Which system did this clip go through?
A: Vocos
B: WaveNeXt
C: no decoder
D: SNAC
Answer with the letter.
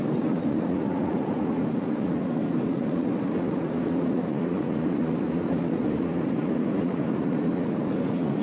A